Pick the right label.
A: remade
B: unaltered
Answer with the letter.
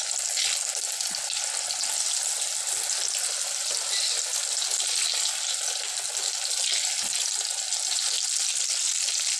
B